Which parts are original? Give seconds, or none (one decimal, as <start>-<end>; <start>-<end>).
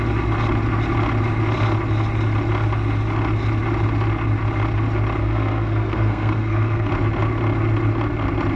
0.0-5.2; 6.9-8.6